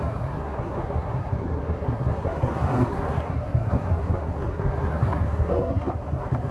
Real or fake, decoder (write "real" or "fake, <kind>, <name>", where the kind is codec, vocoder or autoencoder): fake, codec, SNAC